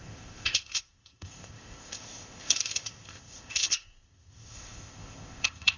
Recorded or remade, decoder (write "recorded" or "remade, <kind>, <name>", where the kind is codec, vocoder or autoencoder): remade, codec, ZipCodec